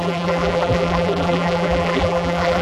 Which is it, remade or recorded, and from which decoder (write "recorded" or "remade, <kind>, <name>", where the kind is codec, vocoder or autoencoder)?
remade, vocoder, BigVGAN v2